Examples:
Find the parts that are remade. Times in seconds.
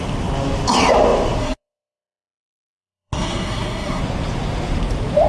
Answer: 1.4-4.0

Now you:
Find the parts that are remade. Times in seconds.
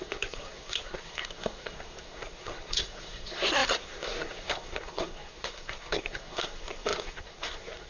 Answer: 0.0-7.9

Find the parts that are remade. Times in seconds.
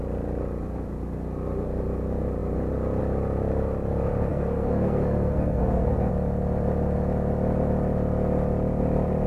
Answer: 4.3-6.1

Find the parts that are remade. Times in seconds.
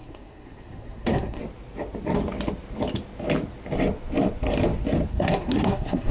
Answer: 0.0-1.4; 5.1-6.1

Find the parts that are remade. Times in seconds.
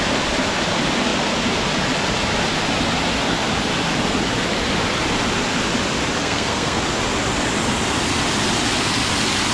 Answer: 6.2-6.8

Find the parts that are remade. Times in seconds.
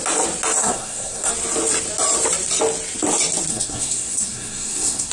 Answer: 0.6-1.3; 3.5-5.1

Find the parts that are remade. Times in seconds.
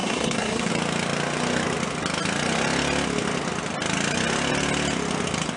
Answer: 0.0-0.7